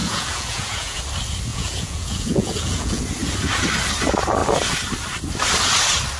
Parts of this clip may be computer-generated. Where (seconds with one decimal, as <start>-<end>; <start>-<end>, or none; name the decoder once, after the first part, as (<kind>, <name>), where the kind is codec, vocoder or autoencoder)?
0.0-1.0 (vocoder, Vocos); 1.5-3.0